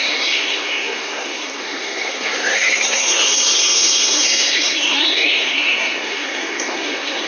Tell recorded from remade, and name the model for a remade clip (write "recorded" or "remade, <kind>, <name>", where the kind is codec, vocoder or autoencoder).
remade, codec, SNAC